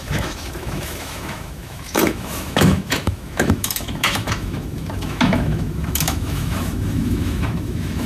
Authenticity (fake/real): fake